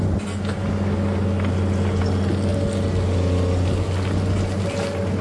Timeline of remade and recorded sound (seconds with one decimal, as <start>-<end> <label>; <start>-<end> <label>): 0.0-5.2 recorded

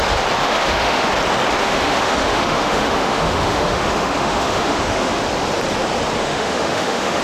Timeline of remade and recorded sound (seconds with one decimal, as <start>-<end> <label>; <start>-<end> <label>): 0.0-0.4 recorded; 0.4-1.1 remade; 1.1-1.6 recorded; 1.6-5.2 remade; 5.2-6.2 recorded; 6.2-7.2 remade